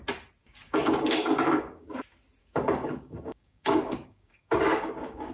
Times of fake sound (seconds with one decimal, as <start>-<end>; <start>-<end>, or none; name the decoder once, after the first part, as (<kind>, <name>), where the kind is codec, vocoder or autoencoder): 0.4-2.0 (codec, DAC); 2.4-5.3